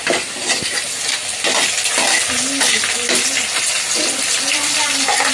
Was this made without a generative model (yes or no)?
yes